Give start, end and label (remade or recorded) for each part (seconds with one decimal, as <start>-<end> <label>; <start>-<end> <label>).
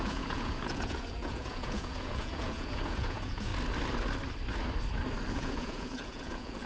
0.0-3.5 remade; 3.5-5.3 recorded; 5.3-6.7 remade